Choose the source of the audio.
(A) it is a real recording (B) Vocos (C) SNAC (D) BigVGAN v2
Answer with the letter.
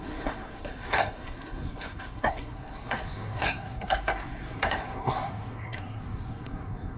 C